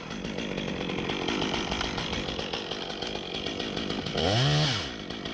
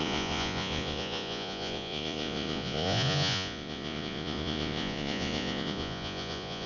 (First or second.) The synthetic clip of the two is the second